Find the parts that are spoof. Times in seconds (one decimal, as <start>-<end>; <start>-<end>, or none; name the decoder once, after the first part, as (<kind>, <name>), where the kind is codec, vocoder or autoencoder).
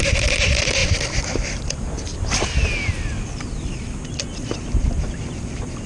none